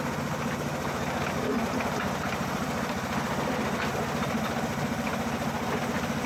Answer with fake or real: real